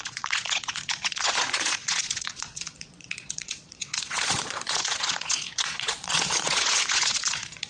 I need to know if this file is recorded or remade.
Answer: remade